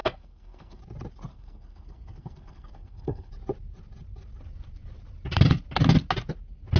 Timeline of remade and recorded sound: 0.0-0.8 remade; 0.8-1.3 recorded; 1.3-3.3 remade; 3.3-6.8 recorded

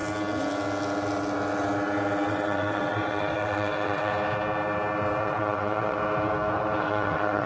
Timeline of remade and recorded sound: 0.0-2.3 recorded; 2.3-4.1 remade; 4.1-5.2 recorded; 5.2-6.0 remade; 6.0-6.8 recorded; 6.8-7.5 remade

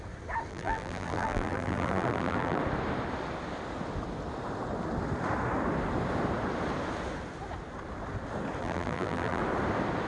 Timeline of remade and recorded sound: 0.0-0.5 recorded; 0.5-2.6 remade; 2.6-8.6 recorded; 8.6-9.4 remade; 9.4-10.1 recorded

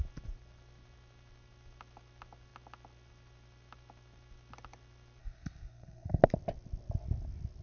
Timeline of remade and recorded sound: 0.0-5.2 recorded; 5.2-6.2 remade; 6.2-7.6 recorded

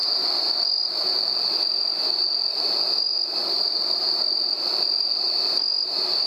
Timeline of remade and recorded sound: 0.0-0.8 remade; 0.8-3.4 recorded; 3.4-5.5 remade; 5.5-6.3 recorded

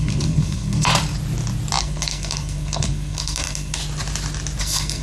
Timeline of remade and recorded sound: 0.0-0.9 remade; 0.9-1.8 recorded; 1.8-3.8 remade; 3.8-4.6 recorded; 4.6-5.0 remade

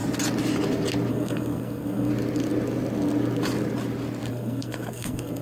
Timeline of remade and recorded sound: 0.0-1.1 recorded; 1.1-2.1 remade; 2.1-4.3 recorded; 4.3-5.4 remade

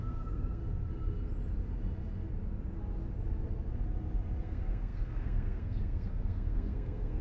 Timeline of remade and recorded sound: 0.0-0.6 remade; 0.6-4.4 recorded; 4.4-7.2 remade